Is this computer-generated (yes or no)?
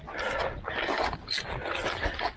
no